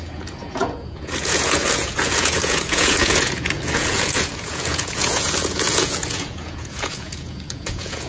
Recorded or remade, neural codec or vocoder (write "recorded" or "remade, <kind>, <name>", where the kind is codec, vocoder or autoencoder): remade, vocoder, Vocos